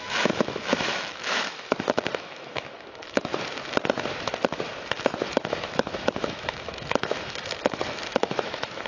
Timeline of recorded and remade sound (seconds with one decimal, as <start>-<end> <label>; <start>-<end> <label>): 0.0-3.3 remade; 3.3-5.3 recorded; 5.3-8.9 remade